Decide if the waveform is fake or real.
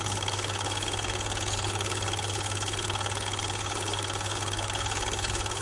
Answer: fake